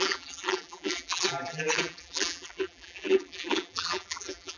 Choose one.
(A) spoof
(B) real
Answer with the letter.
A